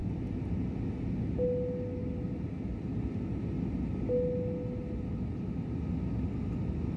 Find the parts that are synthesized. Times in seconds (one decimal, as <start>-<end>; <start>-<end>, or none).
none